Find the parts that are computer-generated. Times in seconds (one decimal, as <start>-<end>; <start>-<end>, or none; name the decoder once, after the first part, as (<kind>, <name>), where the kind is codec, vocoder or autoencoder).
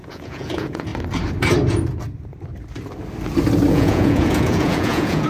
0.0-0.9 (vocoder, Vocos); 3.7-5.3